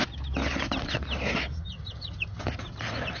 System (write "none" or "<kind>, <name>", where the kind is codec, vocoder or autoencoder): none